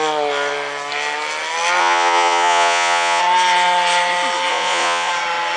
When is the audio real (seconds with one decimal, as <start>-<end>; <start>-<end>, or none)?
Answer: 0.0-1.8; 3.2-4.5; 5.1-5.6